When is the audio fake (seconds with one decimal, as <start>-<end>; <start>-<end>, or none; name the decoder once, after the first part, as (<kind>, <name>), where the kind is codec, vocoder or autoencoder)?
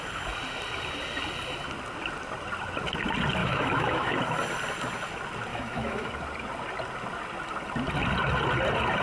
3.4-4.2 (autoencoder, DAC-VAE); 5.5-6.1